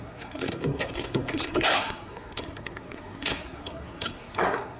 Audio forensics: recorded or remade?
remade